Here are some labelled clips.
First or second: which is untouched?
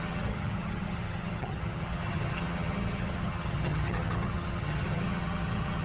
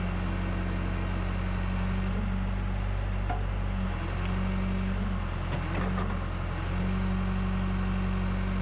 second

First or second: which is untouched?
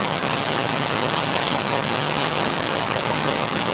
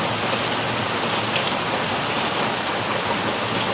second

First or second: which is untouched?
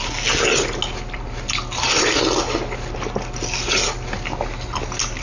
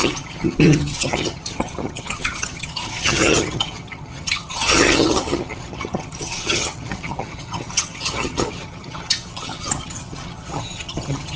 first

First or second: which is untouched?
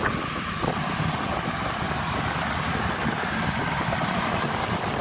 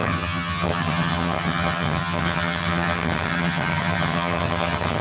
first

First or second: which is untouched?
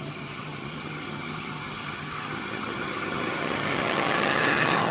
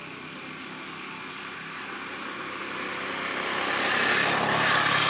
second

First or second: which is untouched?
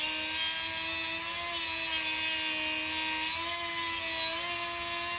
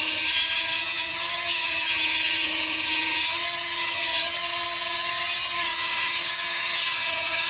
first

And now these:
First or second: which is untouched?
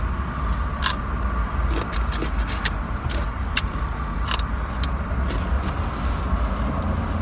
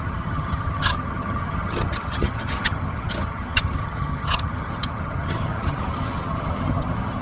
first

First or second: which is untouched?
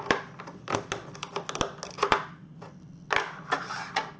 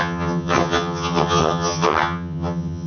first